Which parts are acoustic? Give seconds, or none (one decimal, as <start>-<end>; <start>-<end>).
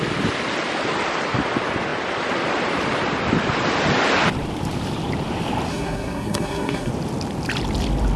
0.0-5.7; 6.9-8.2